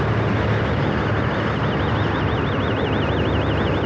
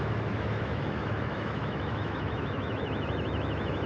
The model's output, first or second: second